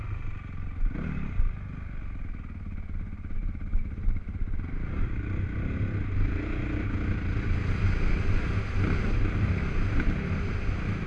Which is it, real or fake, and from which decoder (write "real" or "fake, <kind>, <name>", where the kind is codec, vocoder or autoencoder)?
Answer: real